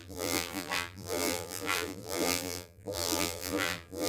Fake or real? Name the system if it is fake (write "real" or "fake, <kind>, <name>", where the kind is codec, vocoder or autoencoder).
fake, vocoder, BigVGAN v2